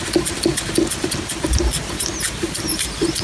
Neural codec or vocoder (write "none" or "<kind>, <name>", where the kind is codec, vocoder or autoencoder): none